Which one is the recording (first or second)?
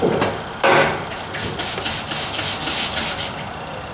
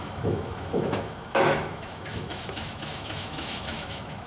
first